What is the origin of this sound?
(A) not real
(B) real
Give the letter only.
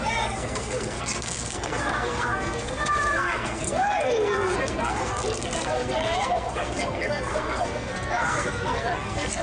A